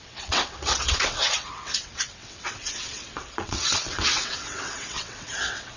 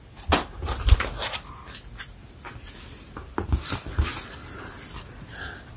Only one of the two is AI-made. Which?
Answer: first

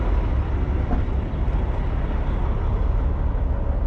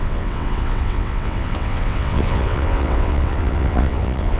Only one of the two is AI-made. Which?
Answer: second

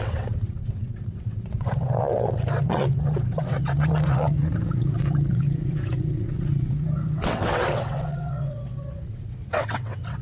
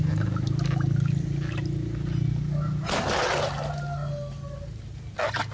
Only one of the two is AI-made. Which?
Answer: first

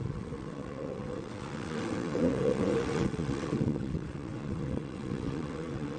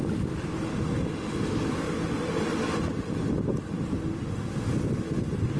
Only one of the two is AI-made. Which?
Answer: first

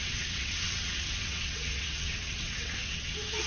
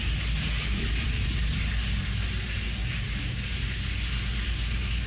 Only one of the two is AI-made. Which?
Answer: first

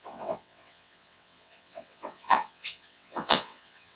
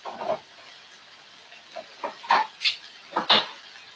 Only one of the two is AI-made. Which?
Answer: first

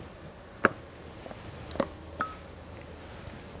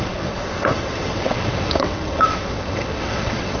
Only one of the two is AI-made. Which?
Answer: second